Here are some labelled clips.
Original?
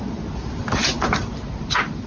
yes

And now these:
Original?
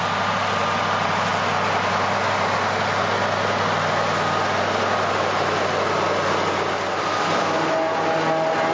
yes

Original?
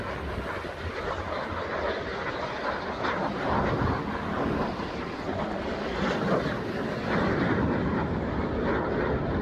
yes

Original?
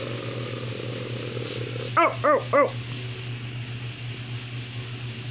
yes